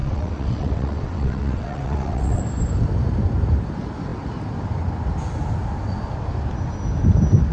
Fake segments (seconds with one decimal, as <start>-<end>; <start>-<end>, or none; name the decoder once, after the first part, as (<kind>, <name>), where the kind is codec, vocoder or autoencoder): 0.0-2.4 (vocoder, WaveNeXt)